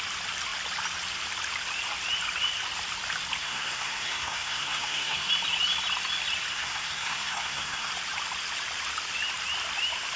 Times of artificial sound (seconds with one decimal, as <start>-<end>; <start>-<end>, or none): 3.4-5.3; 6.5-7.9